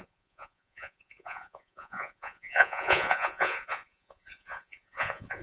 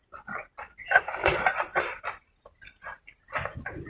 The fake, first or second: first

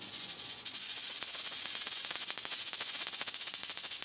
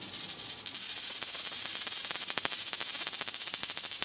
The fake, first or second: first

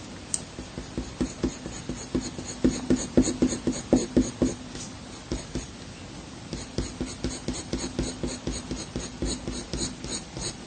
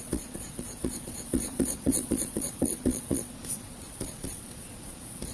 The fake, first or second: second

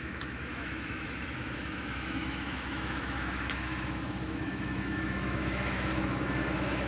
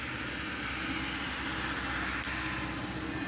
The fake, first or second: first